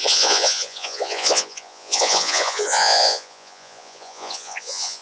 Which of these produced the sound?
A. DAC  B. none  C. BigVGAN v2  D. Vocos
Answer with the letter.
D